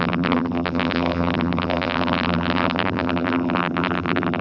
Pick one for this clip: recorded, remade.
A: remade